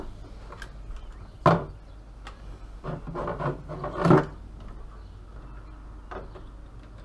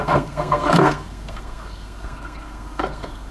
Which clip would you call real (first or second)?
first